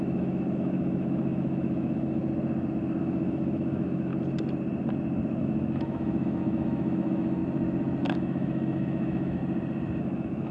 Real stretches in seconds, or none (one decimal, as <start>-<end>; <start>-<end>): 2.2-3.0; 4.1-5.4; 7.4-8.0; 9.4-10.0

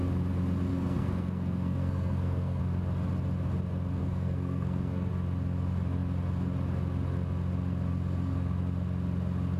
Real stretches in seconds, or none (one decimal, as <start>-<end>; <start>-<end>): 0.0-0.7; 2.6-4.0; 5.1-9.6

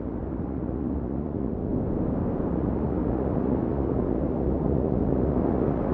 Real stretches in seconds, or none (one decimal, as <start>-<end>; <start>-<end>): 1.7-2.5

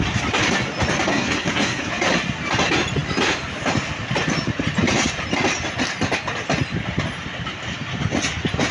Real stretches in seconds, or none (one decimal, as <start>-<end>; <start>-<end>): 0.0-1.1; 1.9-8.7

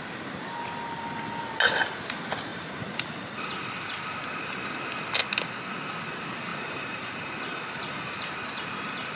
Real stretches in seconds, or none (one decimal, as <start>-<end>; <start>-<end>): 0.0-2.5; 3.5-6.5; 8.3-9.2